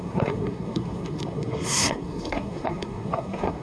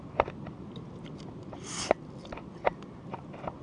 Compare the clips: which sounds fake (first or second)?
first